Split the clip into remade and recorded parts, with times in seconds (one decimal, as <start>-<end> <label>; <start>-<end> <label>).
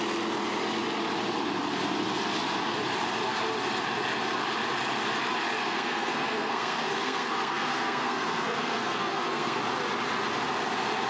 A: 0.0-5.6 recorded; 5.6-9.6 remade; 9.6-11.1 recorded